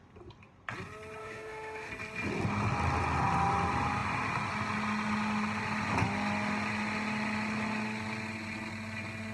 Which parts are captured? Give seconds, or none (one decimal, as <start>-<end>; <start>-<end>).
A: 0.0-1.2; 1.9-9.3